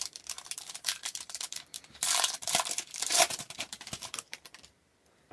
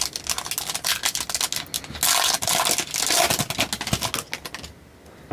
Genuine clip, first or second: second